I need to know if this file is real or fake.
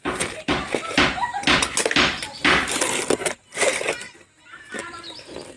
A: real